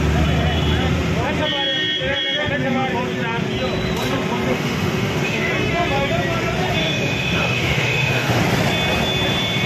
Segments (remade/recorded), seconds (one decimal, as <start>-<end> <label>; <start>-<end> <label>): 0.0-4.5 recorded; 4.5-5.5 remade; 5.5-6.8 recorded; 6.8-8.4 remade; 8.4-9.7 recorded